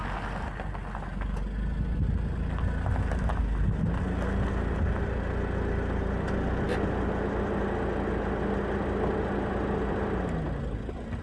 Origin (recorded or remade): recorded